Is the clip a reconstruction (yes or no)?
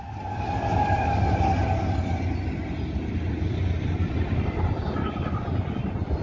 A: no